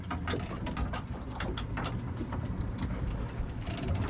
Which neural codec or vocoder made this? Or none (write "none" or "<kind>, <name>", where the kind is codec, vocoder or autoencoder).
none